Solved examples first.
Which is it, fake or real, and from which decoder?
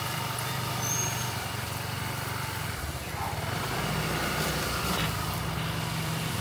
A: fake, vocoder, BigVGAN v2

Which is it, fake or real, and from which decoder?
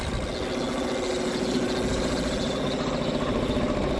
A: real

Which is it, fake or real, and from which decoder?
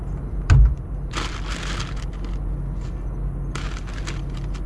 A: real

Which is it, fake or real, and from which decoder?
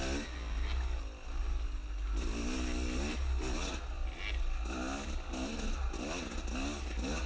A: real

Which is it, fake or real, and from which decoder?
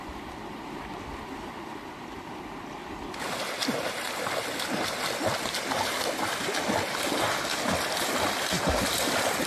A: real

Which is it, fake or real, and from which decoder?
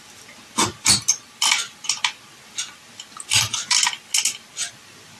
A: real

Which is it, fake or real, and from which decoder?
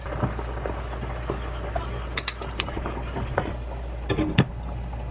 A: real